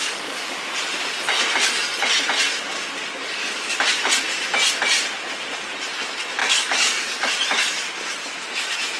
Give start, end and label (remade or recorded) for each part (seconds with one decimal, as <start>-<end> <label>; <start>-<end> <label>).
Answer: 0.0-0.6 remade; 0.6-3.4 recorded; 3.4-3.9 remade; 3.9-6.4 recorded; 6.4-7.3 remade; 7.3-9.0 recorded